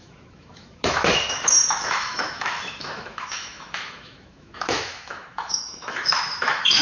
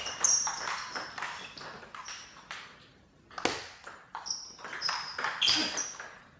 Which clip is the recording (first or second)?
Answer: second